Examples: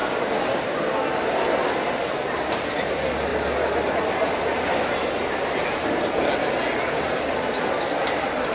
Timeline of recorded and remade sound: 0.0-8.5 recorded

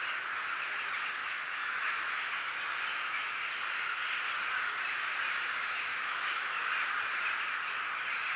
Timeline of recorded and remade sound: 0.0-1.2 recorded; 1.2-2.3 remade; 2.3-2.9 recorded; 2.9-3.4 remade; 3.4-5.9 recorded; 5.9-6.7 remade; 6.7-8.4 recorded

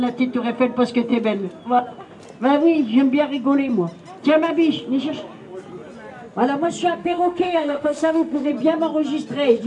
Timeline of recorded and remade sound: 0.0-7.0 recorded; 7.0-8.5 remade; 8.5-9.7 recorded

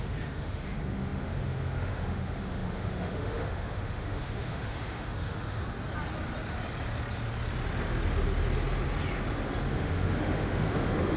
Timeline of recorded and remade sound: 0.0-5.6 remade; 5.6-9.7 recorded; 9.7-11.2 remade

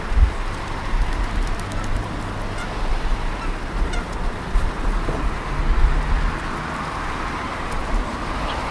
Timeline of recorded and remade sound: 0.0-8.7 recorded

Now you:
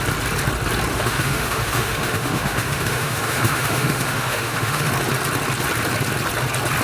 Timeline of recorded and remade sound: 0.0-0.9 recorded; 0.9-4.9 remade; 4.9-6.8 recorded